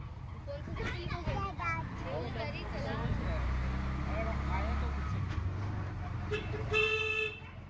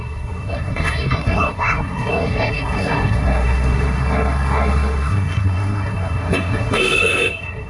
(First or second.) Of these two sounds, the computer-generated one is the second